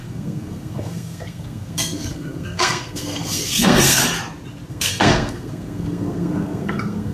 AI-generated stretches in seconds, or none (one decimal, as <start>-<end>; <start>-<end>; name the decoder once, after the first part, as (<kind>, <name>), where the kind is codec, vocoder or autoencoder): 0.0-4.0 (codec, SNAC); 4.7-7.1